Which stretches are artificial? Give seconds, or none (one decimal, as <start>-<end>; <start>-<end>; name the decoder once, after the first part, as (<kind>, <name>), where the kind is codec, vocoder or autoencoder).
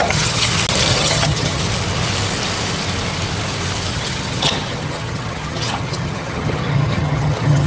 0.0-0.5 (vocoder, HiFi-GAN); 0.9-1.6; 3.9-7.7